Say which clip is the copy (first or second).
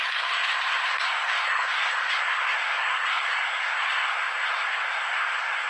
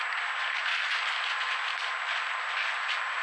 first